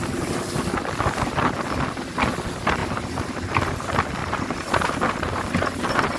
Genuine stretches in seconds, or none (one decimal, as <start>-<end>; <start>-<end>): 0.0-2.8; 3.7-4.2; 4.9-6.2